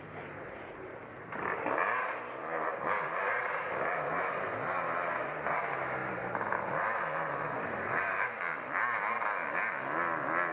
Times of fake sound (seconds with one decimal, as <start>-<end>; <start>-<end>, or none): 6.0-8.3

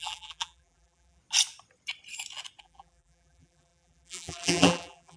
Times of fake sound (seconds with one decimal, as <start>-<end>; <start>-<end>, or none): 0.0-1.2; 2.6-5.2

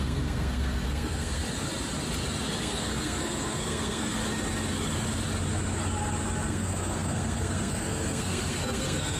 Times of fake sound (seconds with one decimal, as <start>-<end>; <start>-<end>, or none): 0.0-1.4; 2.6-4.2; 6.5-9.2